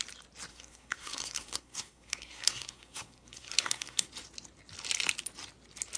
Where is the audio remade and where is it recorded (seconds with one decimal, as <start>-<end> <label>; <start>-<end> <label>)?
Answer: 0.0-0.5 recorded; 0.5-4.1 remade; 4.1-6.0 recorded